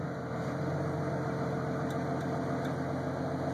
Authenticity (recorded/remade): recorded